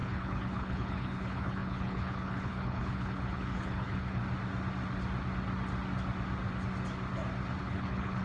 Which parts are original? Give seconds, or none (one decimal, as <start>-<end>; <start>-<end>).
4.2-7.6

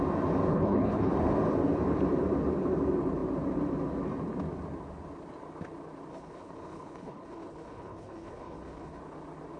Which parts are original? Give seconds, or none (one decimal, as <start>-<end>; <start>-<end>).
0.0-0.5; 1.1-6.1; 9.0-9.6